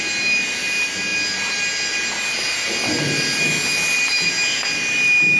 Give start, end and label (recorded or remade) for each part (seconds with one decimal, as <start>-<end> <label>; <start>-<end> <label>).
0.0-5.4 recorded